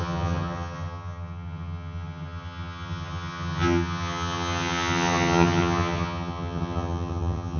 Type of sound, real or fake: fake